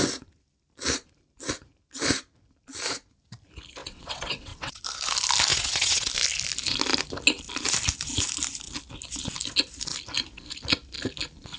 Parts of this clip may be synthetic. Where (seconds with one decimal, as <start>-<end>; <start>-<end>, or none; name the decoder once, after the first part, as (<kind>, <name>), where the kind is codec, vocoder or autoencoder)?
3.8-4.8 (vocoder, WaveNeXt); 5.5-6.1

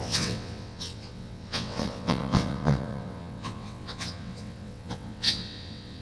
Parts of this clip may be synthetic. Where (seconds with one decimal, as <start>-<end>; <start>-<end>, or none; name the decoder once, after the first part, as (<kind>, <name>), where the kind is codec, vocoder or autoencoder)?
0.0-6.0 (vocoder, WaveNeXt)